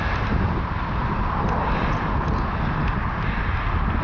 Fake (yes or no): no